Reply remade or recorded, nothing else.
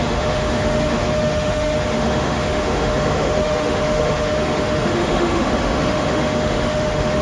remade